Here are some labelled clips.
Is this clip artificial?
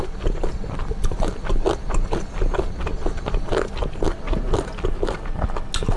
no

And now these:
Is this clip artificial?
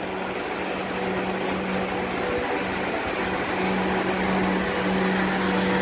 no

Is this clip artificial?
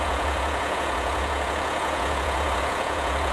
yes